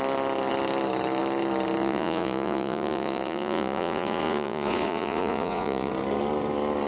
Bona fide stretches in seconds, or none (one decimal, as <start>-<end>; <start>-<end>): 0.0-1.8; 5.9-6.9